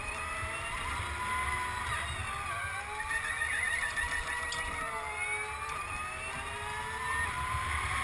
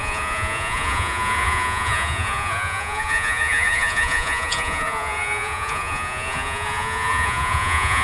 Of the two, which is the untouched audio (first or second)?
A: first